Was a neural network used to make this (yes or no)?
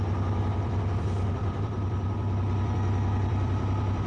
yes